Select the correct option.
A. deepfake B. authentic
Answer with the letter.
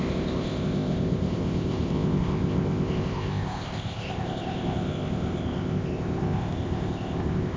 A